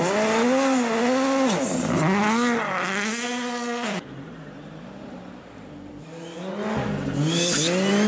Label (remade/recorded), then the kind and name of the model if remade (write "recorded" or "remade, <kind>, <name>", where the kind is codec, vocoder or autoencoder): recorded